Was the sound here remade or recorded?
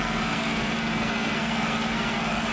remade